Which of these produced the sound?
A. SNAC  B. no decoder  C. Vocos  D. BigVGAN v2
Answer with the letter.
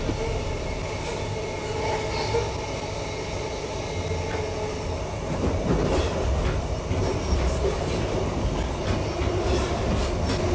B